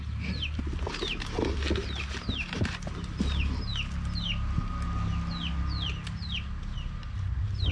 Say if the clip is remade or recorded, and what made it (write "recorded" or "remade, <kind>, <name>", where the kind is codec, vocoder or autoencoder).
recorded